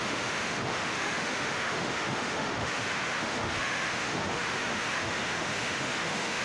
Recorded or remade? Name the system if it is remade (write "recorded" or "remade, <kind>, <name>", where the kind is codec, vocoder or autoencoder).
remade, autoencoder, DAC-VAE